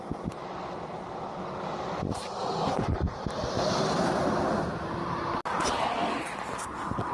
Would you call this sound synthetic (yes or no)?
no